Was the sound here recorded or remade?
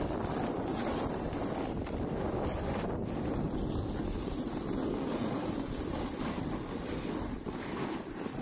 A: recorded